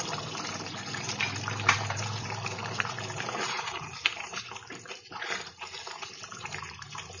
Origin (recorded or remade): remade